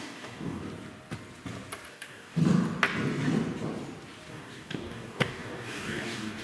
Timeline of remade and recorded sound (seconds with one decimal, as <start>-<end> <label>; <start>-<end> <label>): 0.0-0.6 remade; 0.6-1.9 recorded; 1.9-2.4 remade; 2.4-4.3 recorded; 4.3-6.4 remade